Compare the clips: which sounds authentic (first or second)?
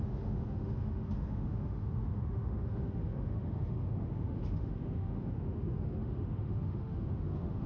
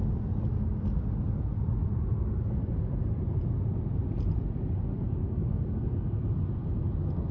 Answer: second